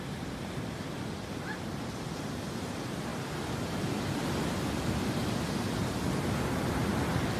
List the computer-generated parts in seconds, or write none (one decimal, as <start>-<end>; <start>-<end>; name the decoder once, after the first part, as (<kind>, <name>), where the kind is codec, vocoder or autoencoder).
none